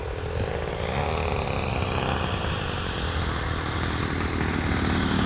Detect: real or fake real